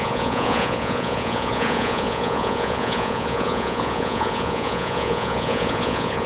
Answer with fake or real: fake